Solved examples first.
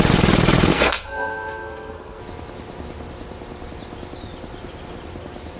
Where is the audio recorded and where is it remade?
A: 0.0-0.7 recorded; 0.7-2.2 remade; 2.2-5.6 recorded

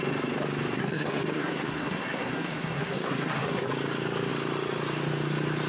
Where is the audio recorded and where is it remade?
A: 0.0-0.8 recorded; 0.8-3.7 remade; 3.7-5.7 recorded

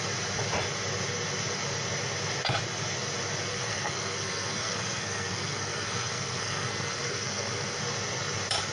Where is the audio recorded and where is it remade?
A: 0.0-3.5 recorded; 3.5-7.8 remade; 7.8-8.7 recorded

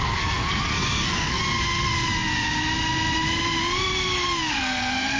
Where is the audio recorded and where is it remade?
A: 0.0-1.4 remade; 1.4-4.5 recorded; 4.5-5.2 remade

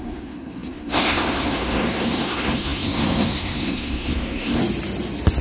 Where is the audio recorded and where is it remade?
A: 0.0-4.6 remade; 4.6-5.4 recorded

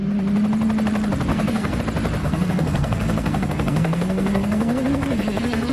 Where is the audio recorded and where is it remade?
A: 0.0-1.3 recorded; 1.3-1.8 remade; 1.8-2.2 recorded; 2.2-5.7 remade

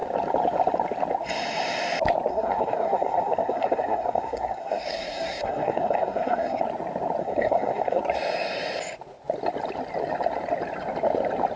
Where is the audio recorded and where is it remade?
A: 0.0-2.3 recorded; 2.3-6.6 remade; 6.6-7.2 recorded; 7.2-8.0 remade; 8.0-11.6 recorded